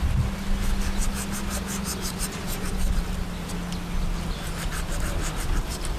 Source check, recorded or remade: recorded